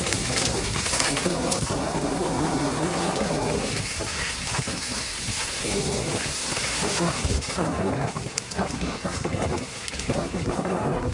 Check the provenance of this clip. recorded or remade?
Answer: remade